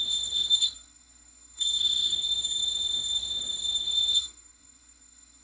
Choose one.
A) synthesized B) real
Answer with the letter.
A